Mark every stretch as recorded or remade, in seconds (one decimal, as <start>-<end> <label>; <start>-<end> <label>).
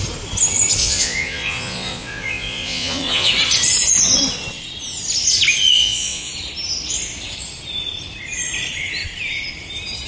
0.0-0.8 recorded; 0.8-3.3 remade; 3.3-5.7 recorded; 5.7-6.3 remade; 6.3-10.1 recorded